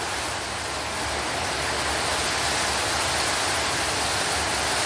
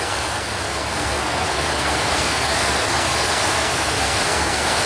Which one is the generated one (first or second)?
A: second